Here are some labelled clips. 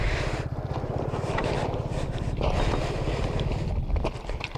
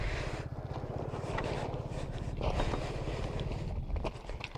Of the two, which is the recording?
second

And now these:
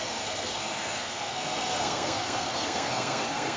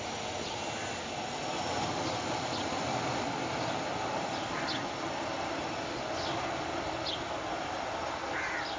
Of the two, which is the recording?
second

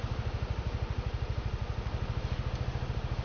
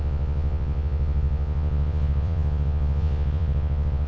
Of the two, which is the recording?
first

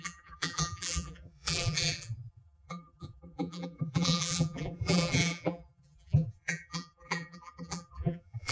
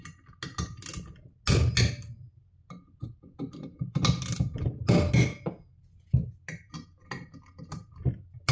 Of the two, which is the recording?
second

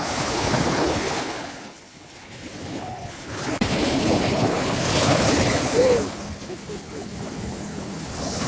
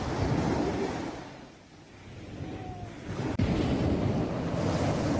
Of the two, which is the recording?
second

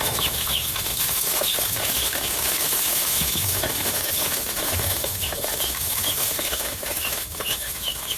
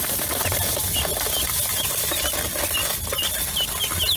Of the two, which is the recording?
second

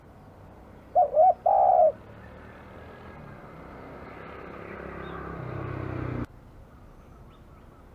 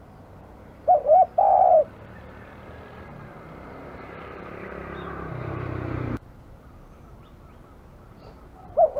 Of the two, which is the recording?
first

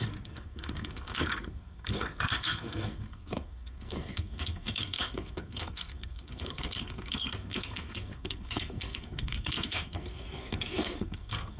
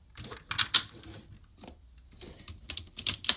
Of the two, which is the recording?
second